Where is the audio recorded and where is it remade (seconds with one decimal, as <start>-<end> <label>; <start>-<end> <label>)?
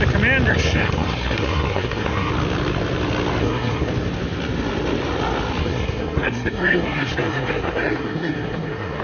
0.0-0.5 recorded; 0.5-2.3 remade; 2.3-3.4 recorded; 3.4-3.9 remade; 3.9-5.6 recorded; 5.6-9.0 remade